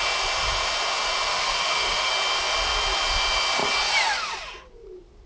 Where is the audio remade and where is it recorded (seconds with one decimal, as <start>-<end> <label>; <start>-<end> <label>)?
0.0-1.3 recorded; 1.3-2.1 remade; 2.1-5.3 recorded